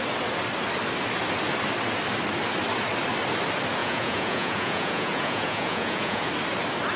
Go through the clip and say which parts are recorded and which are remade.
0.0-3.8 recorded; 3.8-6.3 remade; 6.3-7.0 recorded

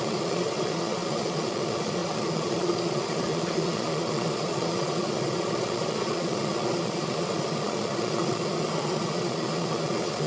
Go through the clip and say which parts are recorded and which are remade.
0.0-10.3 remade

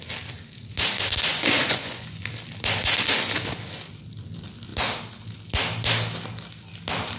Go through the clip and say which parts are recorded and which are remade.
0.0-1.3 recorded; 1.3-2.2 remade; 2.2-7.2 recorded

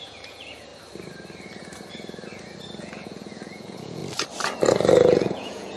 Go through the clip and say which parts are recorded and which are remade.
0.0-0.7 remade; 0.7-2.8 recorded; 2.8-4.0 remade; 4.0-5.0 recorded; 5.0-5.8 remade

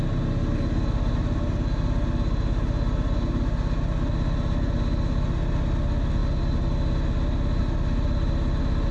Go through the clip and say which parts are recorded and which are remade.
0.0-8.9 recorded

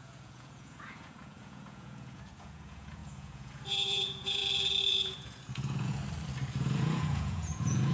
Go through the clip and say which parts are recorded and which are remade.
0.0-4.4 remade; 4.4-4.9 recorded; 4.9-6.0 remade; 6.0-6.6 recorded; 6.6-7.9 remade

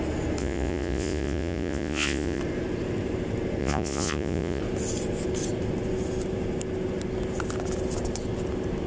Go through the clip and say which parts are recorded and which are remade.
0.0-0.4 recorded; 0.4-2.4 remade; 2.4-3.6 recorded; 3.6-4.6 remade; 4.6-8.9 recorded

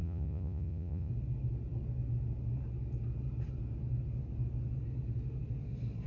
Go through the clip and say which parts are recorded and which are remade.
0.0-1.1 remade; 1.1-6.1 recorded